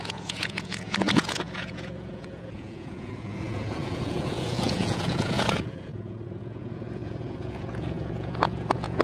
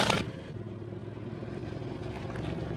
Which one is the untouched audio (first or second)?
second